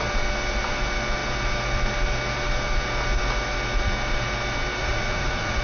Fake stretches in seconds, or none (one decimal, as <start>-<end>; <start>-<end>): 4.8-5.6

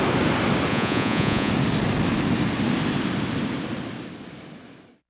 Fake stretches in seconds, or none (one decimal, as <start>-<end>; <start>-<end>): 0.7-1.5

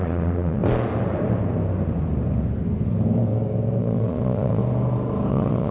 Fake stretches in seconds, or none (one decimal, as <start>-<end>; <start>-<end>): 0.0-0.6; 3.8-4.6; 5.3-5.7

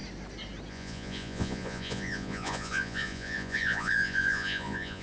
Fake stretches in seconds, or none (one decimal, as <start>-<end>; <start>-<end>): 0.7-5.0